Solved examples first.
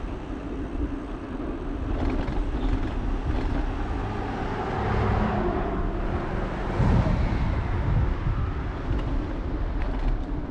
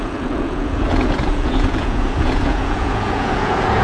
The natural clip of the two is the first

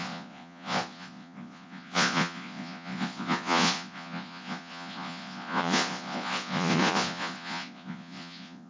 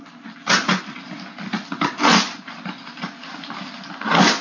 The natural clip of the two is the second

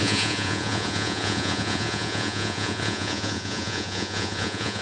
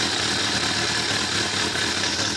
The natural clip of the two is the second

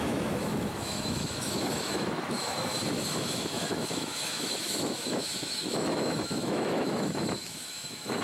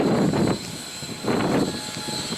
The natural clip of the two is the second